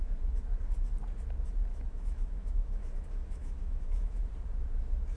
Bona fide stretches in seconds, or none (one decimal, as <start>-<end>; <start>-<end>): 0.0-1.7; 4.3-5.2